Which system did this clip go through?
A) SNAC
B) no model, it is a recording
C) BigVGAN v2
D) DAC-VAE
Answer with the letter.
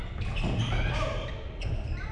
B